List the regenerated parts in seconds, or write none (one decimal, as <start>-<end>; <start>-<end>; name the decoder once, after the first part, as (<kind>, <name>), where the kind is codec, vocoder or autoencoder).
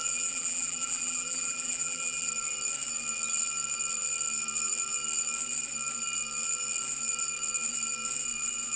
0.0-2.3 (vocoder, BigVGAN v2)